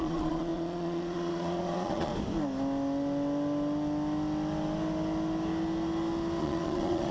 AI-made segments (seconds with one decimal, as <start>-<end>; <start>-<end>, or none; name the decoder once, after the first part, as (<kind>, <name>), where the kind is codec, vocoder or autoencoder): 0.0-2.1 (vocoder, Vocos); 6.4-7.1